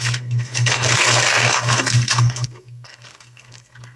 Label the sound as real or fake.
fake